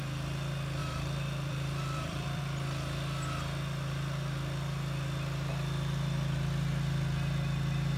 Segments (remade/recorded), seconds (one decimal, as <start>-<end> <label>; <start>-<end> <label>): 0.0-0.8 recorded; 0.8-2.4 remade; 2.4-8.0 recorded